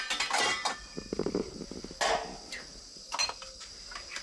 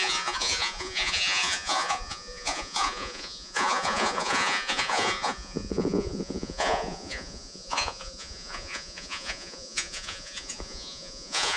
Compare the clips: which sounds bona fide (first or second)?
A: first